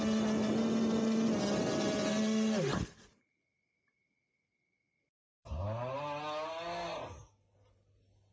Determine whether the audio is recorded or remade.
recorded